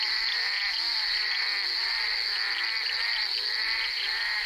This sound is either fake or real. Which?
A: real